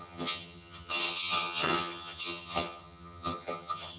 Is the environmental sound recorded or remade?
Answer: remade